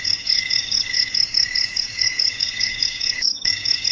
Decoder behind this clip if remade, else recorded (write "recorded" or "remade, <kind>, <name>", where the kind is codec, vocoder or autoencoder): remade, codec, DAC